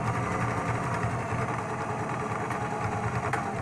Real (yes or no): yes